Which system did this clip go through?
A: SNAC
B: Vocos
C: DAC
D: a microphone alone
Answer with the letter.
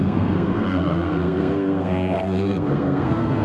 A